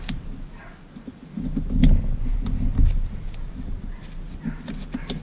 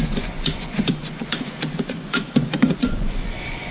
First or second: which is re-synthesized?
second